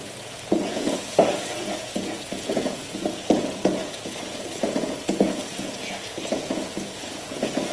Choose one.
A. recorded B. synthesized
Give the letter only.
B